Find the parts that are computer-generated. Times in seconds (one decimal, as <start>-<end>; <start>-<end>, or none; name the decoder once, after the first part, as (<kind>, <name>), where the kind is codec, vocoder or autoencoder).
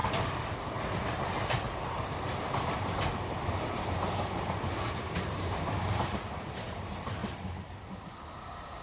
4.9-7.2 (vocoder, BigVGAN v2); 8.4-8.8